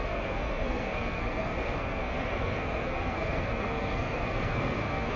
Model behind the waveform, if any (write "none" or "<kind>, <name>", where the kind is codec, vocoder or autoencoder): codec, SNAC